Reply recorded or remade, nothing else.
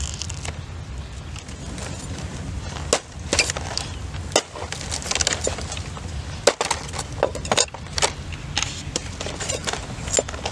recorded